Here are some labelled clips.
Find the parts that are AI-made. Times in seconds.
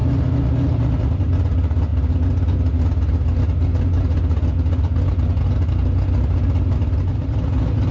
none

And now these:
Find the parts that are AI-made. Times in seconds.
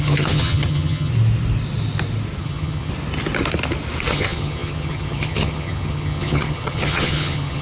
0.0-1.1; 2.4-2.9; 4.1-7.6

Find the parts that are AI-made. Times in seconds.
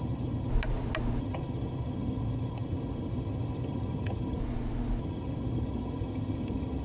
0.0-0.5; 1.2-4.4; 5.0-6.8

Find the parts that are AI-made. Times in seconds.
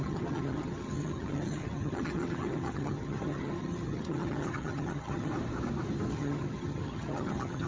0.0-5.3; 6.1-7.7